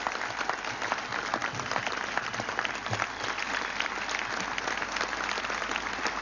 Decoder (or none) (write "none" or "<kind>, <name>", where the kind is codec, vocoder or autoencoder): none